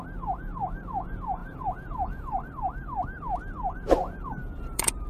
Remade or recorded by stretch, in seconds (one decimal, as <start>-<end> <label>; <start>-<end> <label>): 0.0-1.4 recorded; 1.4-2.5 remade; 2.5-4.0 recorded; 4.0-5.1 remade